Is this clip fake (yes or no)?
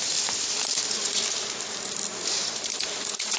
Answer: no